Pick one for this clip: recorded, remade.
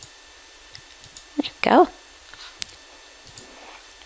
recorded